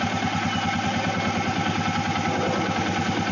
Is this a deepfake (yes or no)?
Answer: no